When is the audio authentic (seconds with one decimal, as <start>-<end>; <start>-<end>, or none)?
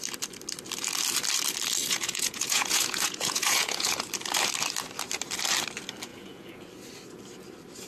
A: 0.0-1.8; 4.1-6.1; 6.7-7.9